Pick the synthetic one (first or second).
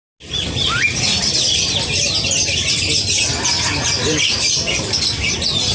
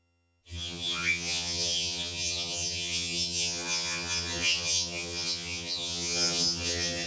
second